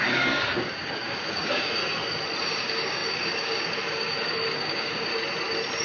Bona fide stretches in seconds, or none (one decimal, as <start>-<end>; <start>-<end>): 1.8-2.4; 5.1-5.8